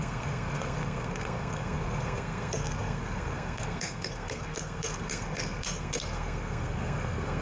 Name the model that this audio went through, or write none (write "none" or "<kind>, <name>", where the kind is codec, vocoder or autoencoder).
codec, SNAC